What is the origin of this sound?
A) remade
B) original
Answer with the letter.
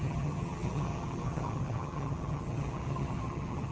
A